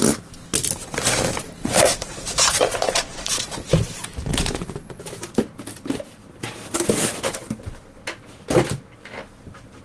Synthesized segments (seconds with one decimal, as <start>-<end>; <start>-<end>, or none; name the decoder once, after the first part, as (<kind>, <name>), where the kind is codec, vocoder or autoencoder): 1.6-3.7 (vocoder, Vocos); 4.3-5.0